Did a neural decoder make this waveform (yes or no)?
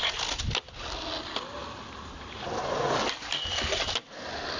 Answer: no